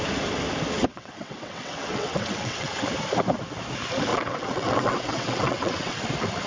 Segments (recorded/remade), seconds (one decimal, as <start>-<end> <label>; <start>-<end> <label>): 0.0-0.8 recorded; 0.8-2.8 remade; 2.8-4.1 recorded; 4.1-6.0 remade; 6.0-6.5 recorded